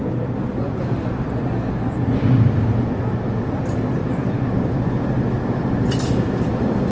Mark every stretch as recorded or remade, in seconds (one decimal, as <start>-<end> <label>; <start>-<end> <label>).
0.0-6.9 recorded